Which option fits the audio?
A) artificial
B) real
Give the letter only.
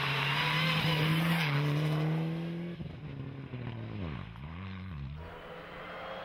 B